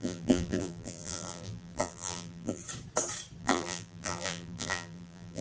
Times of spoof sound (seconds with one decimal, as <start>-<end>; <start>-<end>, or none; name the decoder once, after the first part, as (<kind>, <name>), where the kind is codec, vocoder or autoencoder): 0.0-2.6 (vocoder, BigVGAN v2); 3.4-5.4